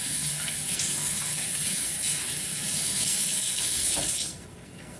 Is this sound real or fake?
fake